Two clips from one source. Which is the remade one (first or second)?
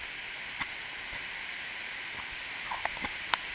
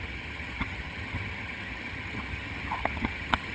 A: second